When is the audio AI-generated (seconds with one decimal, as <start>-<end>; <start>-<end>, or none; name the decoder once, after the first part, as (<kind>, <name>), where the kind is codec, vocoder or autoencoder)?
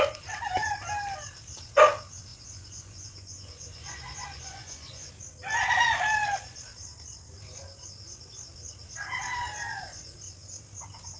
2.3-5.1 (vocoder, Vocos)